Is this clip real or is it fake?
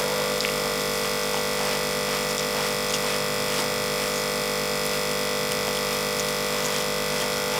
real